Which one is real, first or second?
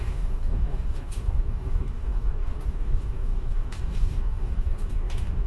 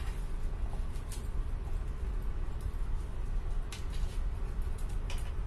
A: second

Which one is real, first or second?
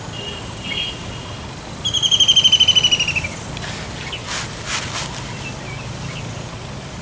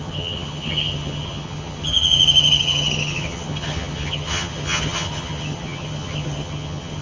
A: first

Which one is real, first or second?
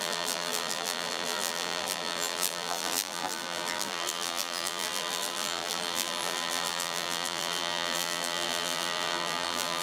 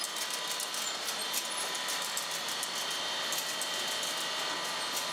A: second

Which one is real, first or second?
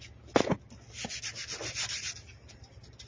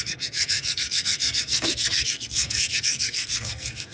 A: first